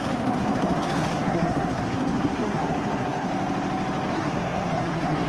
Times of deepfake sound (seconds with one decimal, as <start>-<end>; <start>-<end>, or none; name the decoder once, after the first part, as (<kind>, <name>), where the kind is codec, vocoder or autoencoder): 0.0-3.3 (codec, SNAC); 4.1-5.3